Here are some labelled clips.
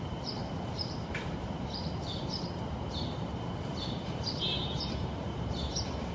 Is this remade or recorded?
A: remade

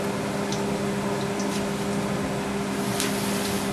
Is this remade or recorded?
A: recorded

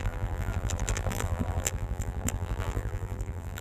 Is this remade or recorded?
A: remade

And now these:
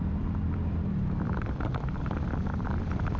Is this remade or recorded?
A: remade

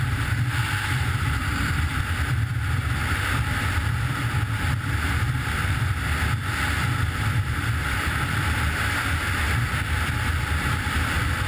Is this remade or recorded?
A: remade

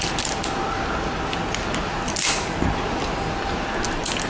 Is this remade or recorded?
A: recorded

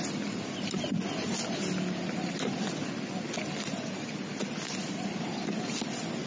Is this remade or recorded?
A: recorded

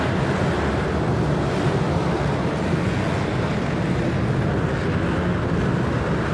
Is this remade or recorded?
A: recorded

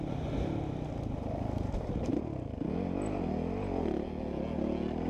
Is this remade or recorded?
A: recorded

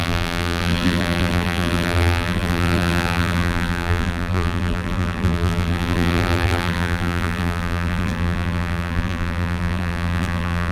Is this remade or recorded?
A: remade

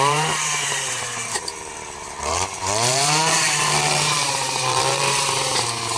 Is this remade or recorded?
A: remade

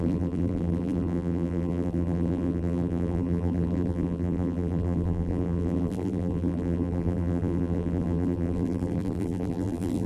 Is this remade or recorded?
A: remade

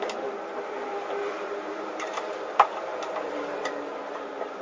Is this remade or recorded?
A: remade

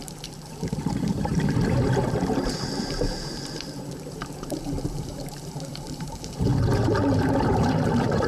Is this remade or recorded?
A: remade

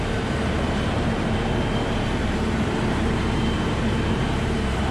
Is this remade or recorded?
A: remade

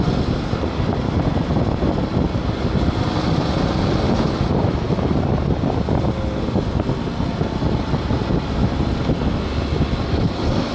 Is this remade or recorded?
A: recorded